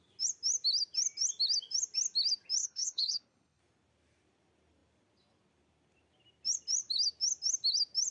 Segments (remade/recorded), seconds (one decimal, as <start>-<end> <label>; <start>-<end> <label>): 0.0-2.6 recorded; 2.6-3.6 remade; 3.6-8.1 recorded